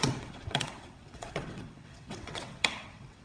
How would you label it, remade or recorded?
remade